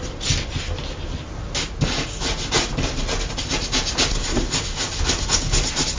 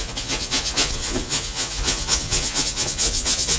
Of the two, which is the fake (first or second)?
second